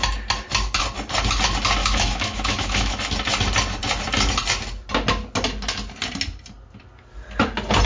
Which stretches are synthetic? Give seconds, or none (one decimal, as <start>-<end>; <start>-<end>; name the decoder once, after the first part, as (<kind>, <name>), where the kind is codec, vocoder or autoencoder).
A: 1.8-3.0 (autoencoder, DAC-VAE)